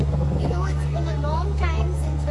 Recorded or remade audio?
remade